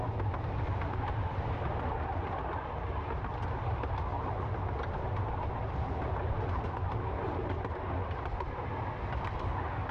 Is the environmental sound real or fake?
real